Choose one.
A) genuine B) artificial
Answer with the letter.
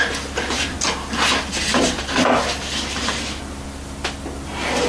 A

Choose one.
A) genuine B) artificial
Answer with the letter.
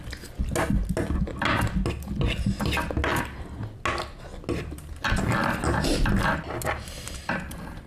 A